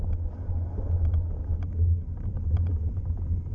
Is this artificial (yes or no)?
no